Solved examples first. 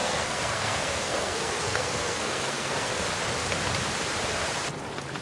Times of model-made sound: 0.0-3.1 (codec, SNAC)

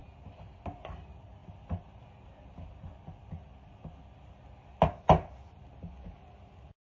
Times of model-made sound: none

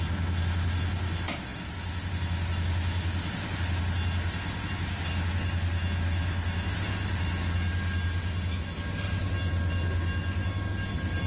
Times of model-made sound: none

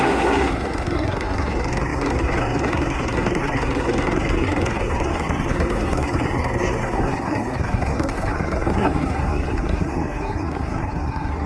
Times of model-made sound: 0.0-11.5 (codec, SNAC)

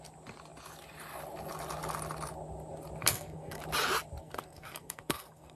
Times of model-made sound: 3.0-3.6 (codec, SNAC); 4.2-5.6

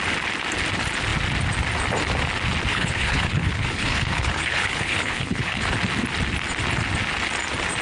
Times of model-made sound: 2.7-5.6 (codec, HILCodec)